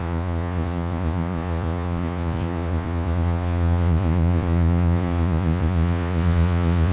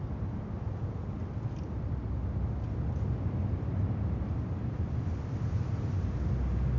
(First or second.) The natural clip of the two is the second